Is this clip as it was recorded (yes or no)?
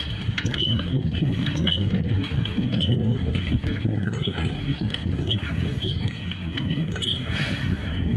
no